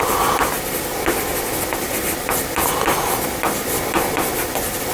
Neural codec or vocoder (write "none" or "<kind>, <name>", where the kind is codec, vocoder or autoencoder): none